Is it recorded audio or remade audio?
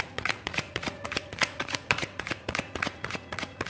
remade